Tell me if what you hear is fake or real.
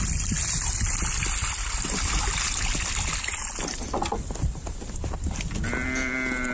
real